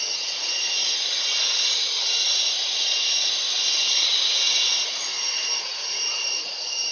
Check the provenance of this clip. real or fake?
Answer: fake